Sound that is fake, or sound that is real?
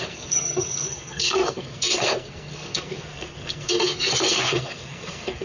fake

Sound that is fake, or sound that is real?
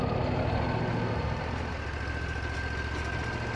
real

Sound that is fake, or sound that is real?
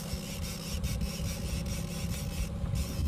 real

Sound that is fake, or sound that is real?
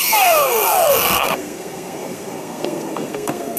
fake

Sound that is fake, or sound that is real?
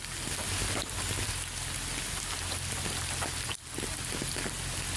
real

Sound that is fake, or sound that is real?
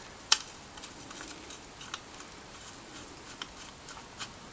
real